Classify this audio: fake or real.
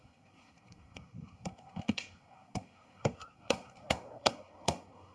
fake